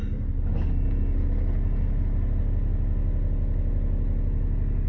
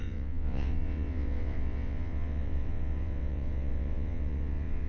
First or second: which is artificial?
second